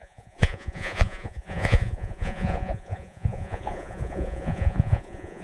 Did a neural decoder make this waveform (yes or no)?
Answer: yes